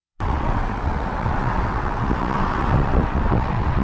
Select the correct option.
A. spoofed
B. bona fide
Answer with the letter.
A